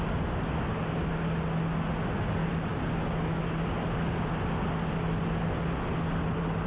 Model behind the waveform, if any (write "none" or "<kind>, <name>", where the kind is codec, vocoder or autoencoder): none